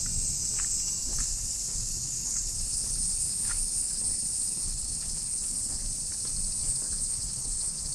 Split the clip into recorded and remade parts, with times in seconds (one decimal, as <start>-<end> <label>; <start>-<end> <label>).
0.0-1.1 recorded; 1.1-5.8 remade; 5.8-6.6 recorded; 6.6-7.9 remade